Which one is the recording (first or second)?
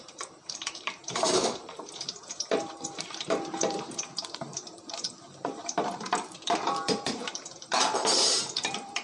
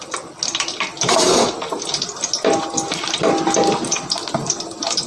second